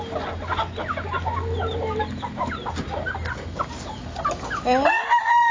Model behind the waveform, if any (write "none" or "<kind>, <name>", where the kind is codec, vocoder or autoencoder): none